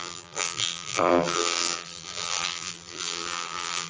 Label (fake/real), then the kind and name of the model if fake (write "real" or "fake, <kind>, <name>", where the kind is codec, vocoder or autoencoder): fake, vocoder, BigVGAN v2